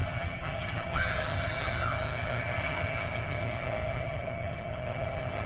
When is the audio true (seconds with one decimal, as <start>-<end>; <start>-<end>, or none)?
none